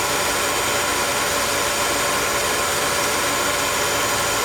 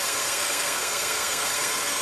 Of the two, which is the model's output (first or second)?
second